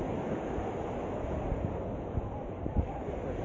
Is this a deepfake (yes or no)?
no